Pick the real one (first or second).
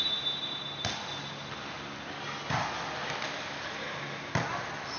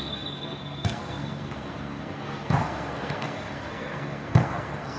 first